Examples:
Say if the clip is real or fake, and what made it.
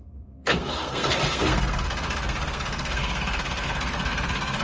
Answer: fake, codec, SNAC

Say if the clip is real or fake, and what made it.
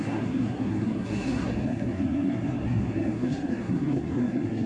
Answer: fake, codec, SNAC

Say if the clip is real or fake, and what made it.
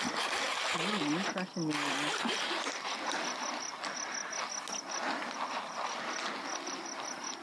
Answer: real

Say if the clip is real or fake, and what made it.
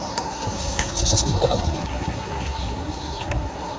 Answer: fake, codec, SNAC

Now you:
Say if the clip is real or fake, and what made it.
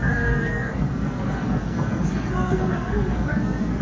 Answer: fake, codec, SNAC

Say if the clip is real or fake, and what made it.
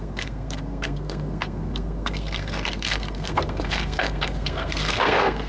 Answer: fake, codec, SNAC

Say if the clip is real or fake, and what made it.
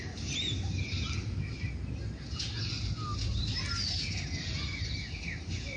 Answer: real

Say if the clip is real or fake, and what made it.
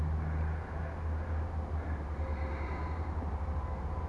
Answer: real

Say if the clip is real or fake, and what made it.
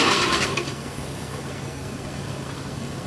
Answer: fake, codec, SNAC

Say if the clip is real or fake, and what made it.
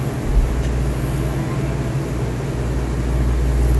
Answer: real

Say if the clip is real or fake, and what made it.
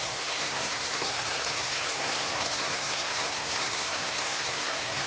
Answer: fake, codec, SNAC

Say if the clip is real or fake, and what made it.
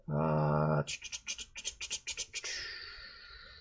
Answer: real